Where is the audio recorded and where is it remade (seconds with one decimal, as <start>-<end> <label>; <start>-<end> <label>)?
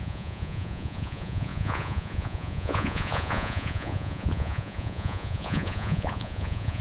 0.0-6.8 remade